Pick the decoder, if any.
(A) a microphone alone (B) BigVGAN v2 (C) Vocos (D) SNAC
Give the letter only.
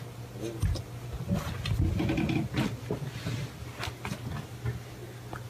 A